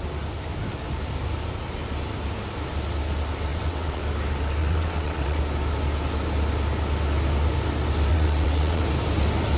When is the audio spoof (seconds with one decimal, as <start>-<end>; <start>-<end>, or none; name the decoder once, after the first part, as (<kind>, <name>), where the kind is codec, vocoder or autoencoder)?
3.5-4.0 (vocoder, WaveNeXt); 4.6-5.4; 8.1-8.8